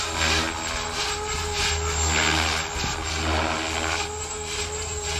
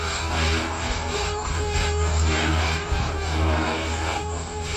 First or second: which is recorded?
first